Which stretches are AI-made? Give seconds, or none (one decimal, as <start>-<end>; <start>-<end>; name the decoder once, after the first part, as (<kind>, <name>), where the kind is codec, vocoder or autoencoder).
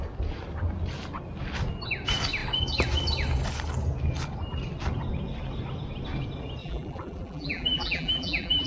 6.6-8.7 (vocoder, BigVGAN v2)